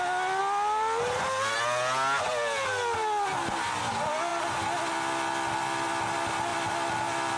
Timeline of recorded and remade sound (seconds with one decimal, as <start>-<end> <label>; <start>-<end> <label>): 0.0-7.4 recorded